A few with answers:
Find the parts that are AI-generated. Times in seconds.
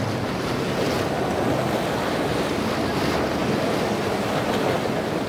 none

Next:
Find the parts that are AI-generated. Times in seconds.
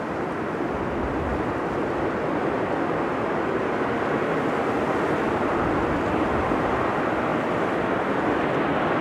none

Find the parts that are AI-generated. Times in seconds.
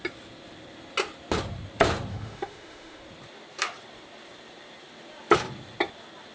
2.1-3.0 (autoencoder, DAC-VAE)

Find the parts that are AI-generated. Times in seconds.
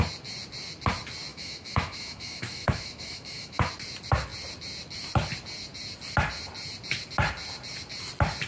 1.3-3.7 (autoencoder, DAC-VAE)